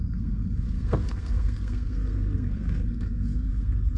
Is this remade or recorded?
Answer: remade